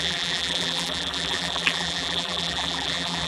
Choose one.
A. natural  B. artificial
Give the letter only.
B